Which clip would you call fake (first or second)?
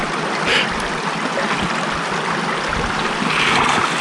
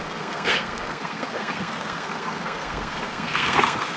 second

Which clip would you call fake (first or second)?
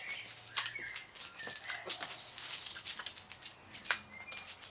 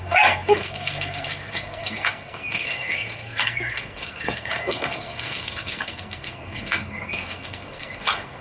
second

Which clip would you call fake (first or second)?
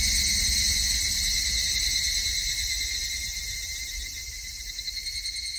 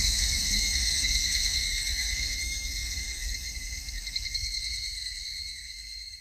second